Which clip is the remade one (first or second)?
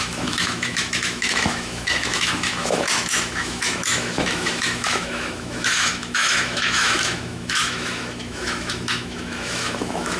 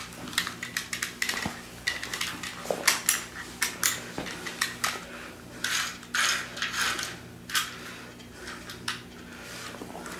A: first